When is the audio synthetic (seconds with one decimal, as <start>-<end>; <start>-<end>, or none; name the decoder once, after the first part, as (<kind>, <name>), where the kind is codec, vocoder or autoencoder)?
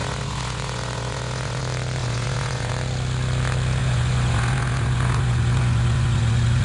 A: 0.0-1.6 (vocoder, Vocos); 2.0-2.7; 3.8-6.6